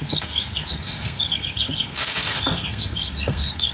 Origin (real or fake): fake